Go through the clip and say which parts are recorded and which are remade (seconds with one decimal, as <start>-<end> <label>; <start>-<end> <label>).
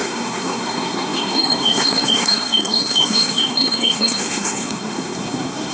0.0-5.7 remade